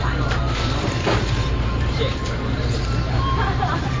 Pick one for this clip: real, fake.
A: fake